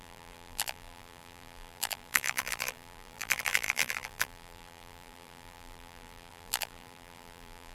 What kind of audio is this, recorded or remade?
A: remade